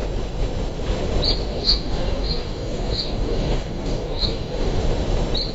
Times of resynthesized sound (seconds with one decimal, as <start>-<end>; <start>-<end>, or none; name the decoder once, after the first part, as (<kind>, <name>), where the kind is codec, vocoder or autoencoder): 1.5-4.8 (codec, DAC)